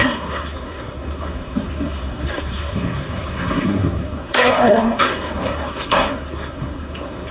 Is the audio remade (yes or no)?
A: yes